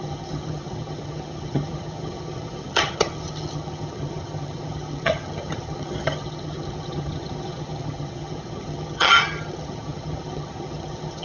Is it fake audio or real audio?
fake